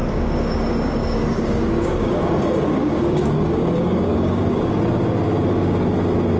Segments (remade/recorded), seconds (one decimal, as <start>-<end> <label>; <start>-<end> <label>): 0.0-0.6 remade; 0.6-1.0 recorded; 1.0-4.8 remade; 4.8-6.4 recorded